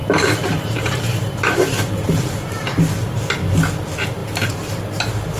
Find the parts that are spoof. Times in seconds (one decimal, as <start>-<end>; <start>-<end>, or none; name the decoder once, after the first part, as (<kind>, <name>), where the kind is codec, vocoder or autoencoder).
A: 0.0-3.2 (vocoder, BigVGAN v2); 4.2-4.8